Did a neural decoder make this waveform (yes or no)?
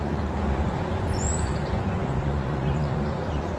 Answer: yes